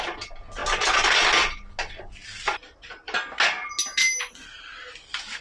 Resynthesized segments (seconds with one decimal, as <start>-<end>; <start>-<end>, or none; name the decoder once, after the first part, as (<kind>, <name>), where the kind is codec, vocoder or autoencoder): none